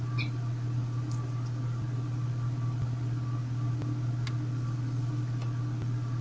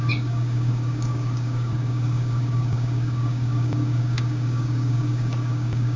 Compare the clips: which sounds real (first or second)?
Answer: first